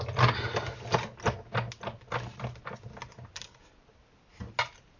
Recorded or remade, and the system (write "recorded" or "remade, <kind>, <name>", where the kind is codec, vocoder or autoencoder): recorded